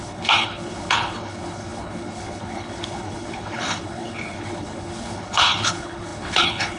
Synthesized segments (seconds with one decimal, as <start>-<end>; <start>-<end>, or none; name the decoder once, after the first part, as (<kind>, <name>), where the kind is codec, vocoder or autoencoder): 0.0-6.8 (codec, HILCodec)